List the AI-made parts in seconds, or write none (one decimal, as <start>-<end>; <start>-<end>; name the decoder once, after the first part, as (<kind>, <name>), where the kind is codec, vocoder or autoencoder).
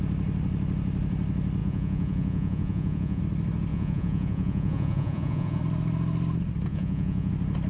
1.6-3.2 (vocoder, Vocos); 3.7-5.6; 6.7-7.3